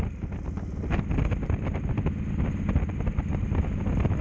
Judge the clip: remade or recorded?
recorded